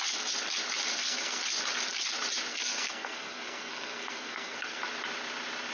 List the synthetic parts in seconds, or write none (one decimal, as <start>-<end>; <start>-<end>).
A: 0.9-1.4; 2.5-4.8